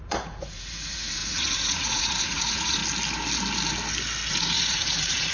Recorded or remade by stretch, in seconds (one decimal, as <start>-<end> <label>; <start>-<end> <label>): 0.0-2.8 remade; 2.8-4.3 recorded; 4.3-5.3 remade